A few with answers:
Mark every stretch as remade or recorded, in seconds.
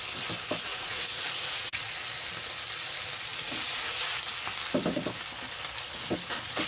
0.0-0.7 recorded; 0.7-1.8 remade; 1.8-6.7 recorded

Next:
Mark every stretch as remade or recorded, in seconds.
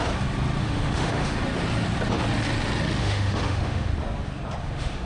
0.0-0.6 recorded; 0.6-1.4 remade; 1.4-3.0 recorded; 3.0-3.9 remade; 3.9-4.6 recorded; 4.6-5.1 remade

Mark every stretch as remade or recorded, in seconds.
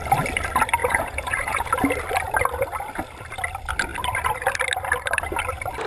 0.0-0.8 recorded; 0.8-1.7 remade; 1.7-5.9 recorded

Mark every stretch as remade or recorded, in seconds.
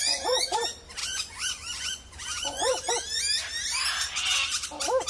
0.0-0.6 remade; 0.6-1.0 recorded; 1.0-2.9 remade; 2.9-5.1 recorded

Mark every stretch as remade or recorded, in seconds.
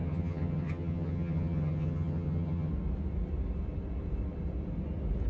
0.0-2.7 remade; 2.7-5.3 recorded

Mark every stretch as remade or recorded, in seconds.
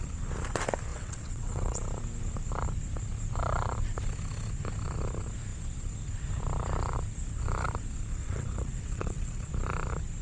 0.0-0.9 recorded; 0.9-1.8 remade; 1.8-8.2 recorded; 8.2-9.5 remade; 9.5-10.2 recorded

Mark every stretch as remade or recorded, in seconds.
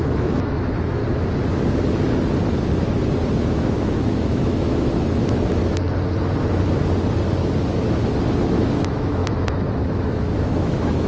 0.0-1.0 remade; 1.0-3.4 recorded; 3.4-5.6 remade; 5.6-8.5 recorded; 8.5-11.1 remade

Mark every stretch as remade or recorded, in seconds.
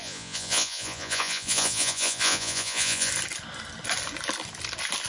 0.0-3.1 remade; 3.1-5.1 recorded